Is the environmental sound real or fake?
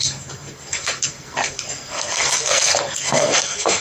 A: fake